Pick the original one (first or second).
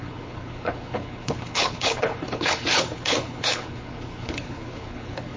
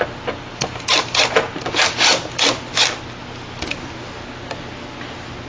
second